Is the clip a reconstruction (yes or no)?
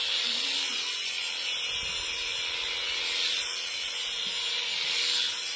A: no